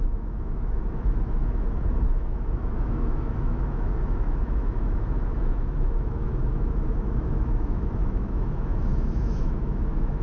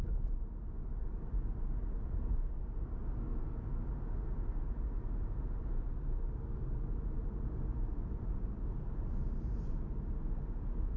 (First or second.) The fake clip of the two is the first